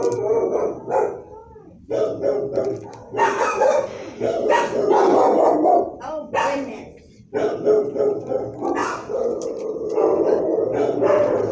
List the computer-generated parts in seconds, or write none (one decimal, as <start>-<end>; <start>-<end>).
none